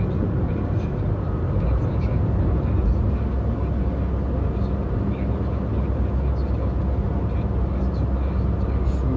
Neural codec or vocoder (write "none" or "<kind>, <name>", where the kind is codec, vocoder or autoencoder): none